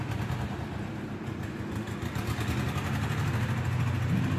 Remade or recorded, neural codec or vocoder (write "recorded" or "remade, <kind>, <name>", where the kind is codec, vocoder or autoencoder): recorded